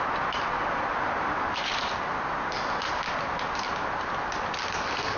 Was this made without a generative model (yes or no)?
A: yes